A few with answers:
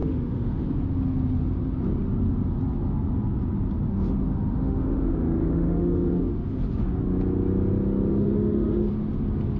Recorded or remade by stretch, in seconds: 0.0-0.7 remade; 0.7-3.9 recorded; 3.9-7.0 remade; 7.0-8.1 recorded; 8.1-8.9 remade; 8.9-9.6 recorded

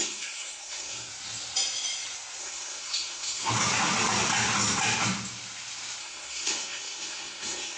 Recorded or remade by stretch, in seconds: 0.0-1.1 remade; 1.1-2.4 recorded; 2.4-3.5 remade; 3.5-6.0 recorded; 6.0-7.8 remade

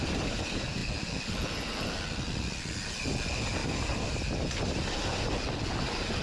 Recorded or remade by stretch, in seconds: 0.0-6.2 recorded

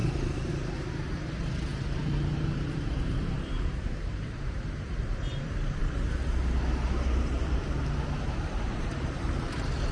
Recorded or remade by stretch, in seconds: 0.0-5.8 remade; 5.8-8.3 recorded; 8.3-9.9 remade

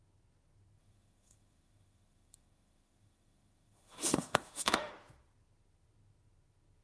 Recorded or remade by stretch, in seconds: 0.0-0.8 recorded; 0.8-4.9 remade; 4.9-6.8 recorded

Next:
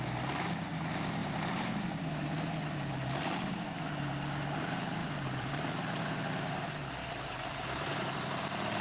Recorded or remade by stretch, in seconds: 0.0-1.2 recorded; 1.2-2.0 remade; 2.0-5.0 recorded; 5.0-5.5 remade; 5.5-7.0 recorded; 7.0-8.4 remade; 8.4-8.8 recorded

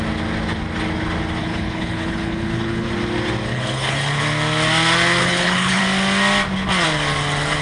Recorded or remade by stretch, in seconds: 0.0-1.4 recorded; 1.4-2.9 remade; 2.9-3.5 recorded; 3.5-4.2 remade; 4.2-5.2 recorded; 5.2-5.8 remade; 5.8-7.6 recorded